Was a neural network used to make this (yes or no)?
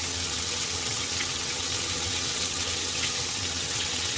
yes